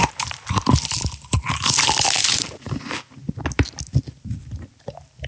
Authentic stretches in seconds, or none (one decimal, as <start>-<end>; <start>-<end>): 3.2-3.9; 4.4-5.3